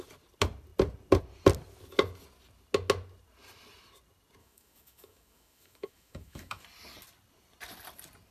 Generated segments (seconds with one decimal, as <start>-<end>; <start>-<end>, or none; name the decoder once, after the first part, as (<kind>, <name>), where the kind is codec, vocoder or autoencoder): 4.4-6.6 (autoencoder, DAC-VAE)